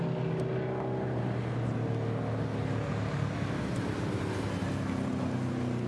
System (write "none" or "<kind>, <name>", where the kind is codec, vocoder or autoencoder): none